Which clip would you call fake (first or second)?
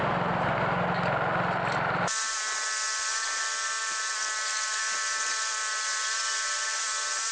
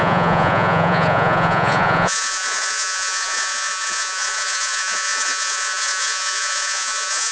second